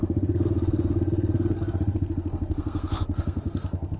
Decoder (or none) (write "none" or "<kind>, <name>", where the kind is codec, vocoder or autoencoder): codec, SNAC